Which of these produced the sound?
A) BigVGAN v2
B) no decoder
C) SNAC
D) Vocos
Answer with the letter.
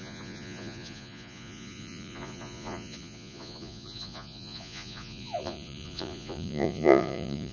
D